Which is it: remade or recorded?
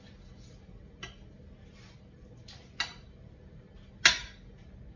recorded